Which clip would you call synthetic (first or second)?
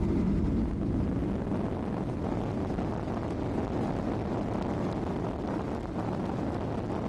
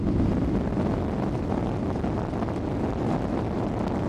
second